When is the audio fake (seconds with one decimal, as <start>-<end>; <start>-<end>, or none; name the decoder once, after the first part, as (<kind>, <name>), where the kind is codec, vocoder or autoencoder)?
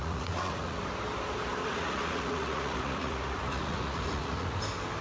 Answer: 0.0-0.8 (vocoder, Vocos); 1.6-4.6